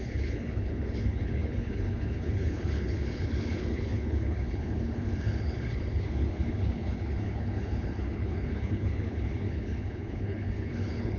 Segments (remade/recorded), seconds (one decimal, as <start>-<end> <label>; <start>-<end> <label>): 0.0-11.2 remade